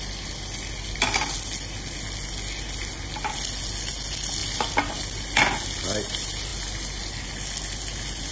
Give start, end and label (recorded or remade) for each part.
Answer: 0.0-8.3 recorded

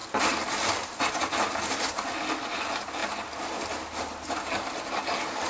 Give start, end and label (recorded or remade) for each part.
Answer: 0.0-3.0 recorded; 3.0-4.8 remade; 4.8-5.5 recorded

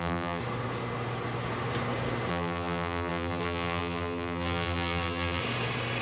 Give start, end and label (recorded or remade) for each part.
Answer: 0.0-0.4 remade; 0.4-2.3 recorded; 2.3-5.4 remade; 5.4-6.0 recorded